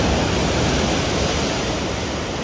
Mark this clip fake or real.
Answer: real